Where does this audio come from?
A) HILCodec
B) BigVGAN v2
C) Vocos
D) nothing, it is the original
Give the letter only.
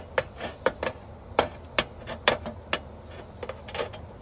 D